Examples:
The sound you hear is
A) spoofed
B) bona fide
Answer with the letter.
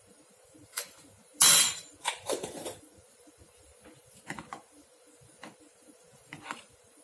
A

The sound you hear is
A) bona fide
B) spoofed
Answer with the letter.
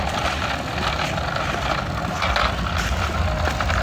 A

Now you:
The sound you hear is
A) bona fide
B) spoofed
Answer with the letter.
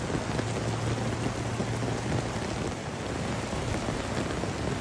A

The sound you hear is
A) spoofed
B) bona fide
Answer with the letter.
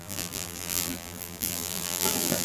A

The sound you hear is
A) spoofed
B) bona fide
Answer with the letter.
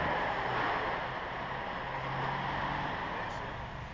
B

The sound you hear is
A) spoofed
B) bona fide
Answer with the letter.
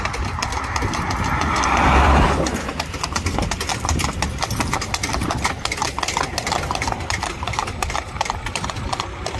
A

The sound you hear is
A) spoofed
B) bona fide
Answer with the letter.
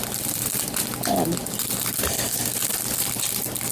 A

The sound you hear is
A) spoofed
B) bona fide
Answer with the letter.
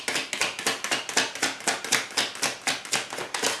B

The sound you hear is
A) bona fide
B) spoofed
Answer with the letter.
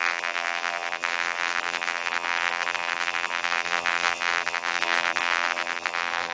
B